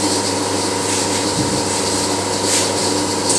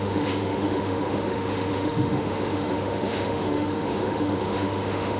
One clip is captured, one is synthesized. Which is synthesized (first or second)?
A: second